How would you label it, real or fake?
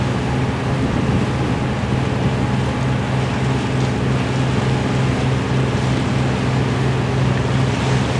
real